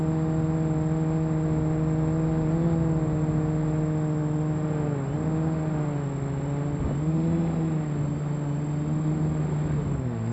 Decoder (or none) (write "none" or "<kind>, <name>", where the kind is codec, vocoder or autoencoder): none